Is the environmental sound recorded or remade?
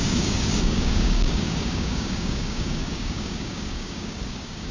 remade